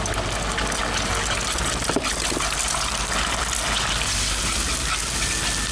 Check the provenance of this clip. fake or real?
real